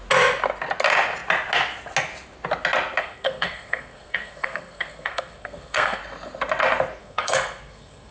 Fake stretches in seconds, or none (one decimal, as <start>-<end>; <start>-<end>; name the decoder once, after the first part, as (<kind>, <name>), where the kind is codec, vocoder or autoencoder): 3.0-6.0 (codec, SNAC); 7.0-8.1